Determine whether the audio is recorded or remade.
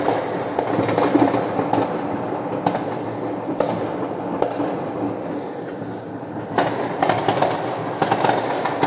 recorded